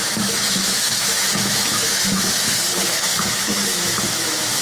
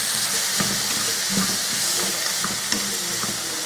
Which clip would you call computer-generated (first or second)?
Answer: first